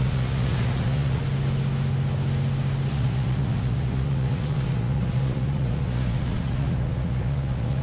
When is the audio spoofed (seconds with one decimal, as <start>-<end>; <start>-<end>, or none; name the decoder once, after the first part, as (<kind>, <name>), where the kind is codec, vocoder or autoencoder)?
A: 0.0-1.2 (vocoder, Vocos); 2.9-7.8